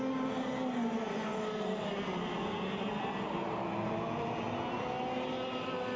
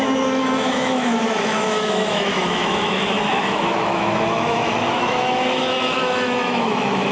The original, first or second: first